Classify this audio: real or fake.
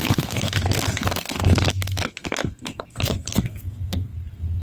fake